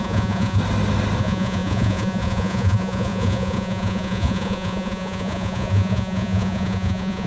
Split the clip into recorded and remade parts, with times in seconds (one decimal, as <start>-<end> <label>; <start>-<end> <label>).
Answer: 0.0-0.6 remade; 0.6-1.2 recorded; 1.2-7.3 remade